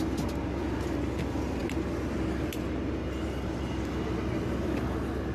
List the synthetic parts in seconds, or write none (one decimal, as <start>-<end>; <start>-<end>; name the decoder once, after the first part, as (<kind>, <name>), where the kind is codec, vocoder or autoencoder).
none